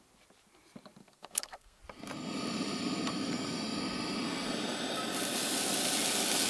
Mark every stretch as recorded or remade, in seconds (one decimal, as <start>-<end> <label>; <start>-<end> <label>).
0.0-1.0 recorded; 1.0-1.8 remade; 1.8-6.5 recorded